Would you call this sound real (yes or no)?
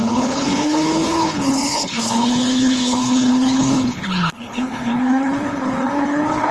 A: no